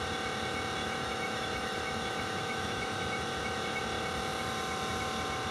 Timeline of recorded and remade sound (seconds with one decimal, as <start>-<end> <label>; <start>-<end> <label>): 0.0-0.8 recorded; 0.8-3.8 remade; 3.8-5.5 recorded